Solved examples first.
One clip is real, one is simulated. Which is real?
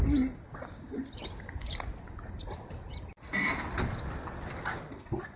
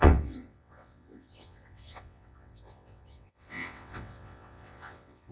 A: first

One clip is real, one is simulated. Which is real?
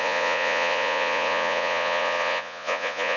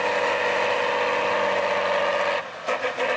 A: second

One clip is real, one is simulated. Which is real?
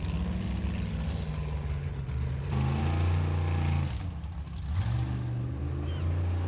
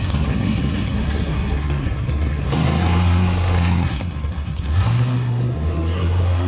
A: first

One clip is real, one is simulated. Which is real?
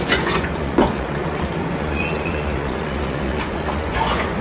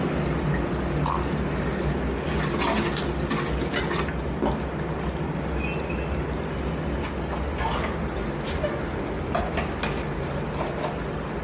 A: second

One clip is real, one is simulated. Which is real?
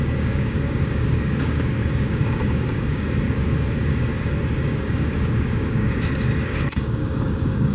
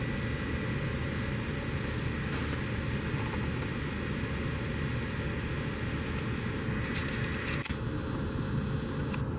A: second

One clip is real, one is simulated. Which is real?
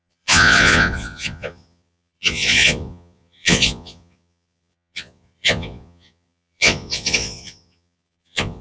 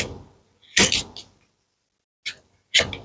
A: second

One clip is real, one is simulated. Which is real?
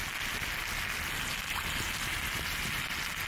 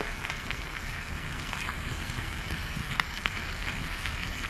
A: first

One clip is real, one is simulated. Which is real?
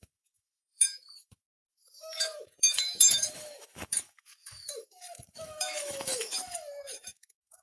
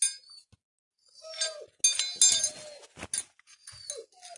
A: second